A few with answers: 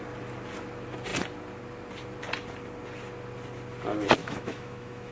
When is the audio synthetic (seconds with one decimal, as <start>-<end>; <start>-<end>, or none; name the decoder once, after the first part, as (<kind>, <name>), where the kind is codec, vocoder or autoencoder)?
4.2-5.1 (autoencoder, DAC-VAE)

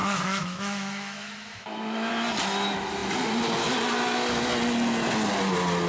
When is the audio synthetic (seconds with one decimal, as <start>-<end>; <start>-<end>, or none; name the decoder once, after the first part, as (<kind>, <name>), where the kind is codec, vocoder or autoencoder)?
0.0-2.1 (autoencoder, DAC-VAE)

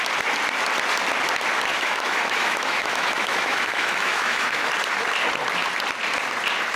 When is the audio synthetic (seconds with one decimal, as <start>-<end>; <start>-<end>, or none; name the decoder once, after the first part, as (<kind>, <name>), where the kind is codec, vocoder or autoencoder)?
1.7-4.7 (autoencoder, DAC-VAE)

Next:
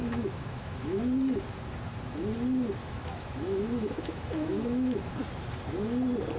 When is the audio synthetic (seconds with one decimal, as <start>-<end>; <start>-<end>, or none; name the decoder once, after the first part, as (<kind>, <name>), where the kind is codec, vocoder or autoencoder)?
0.0-1.0 (autoencoder, DAC-VAE); 2.8-5.1

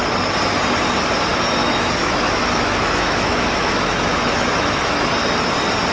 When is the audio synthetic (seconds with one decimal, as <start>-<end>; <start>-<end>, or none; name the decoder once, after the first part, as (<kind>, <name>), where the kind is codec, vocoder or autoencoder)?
1.6-5.1 (autoencoder, DAC-VAE)

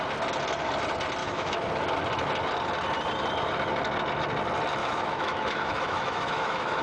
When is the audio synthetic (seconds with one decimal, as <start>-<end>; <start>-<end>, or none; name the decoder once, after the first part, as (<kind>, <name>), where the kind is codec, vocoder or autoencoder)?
1.2-1.7 (autoencoder, DAC-VAE); 4.8-6.8

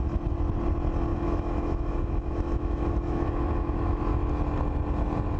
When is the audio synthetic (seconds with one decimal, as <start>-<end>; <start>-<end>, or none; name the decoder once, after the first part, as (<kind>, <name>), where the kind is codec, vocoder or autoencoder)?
1.1-4.3 (autoencoder, DAC-VAE)